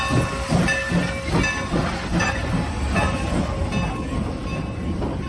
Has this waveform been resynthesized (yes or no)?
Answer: no